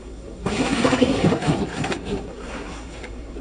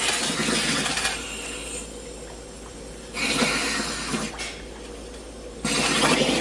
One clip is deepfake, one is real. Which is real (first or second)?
second